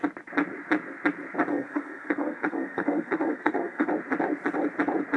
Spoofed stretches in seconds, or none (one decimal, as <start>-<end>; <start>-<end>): 1.5-3.9